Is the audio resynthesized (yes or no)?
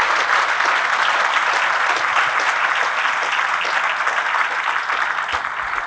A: no